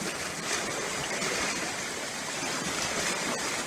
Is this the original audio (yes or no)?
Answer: yes